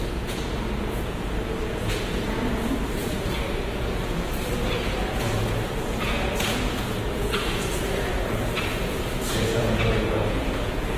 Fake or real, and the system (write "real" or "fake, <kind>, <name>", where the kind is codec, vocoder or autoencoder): fake, vocoder, Vocos